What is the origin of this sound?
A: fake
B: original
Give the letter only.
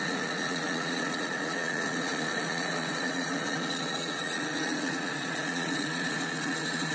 A